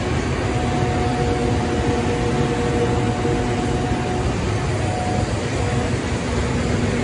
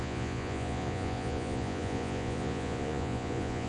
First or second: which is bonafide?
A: first